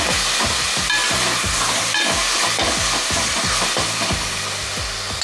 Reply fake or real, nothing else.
real